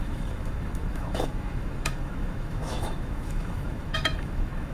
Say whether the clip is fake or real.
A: fake